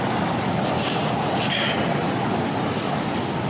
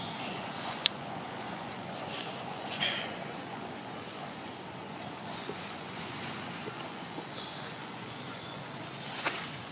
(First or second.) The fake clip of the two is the second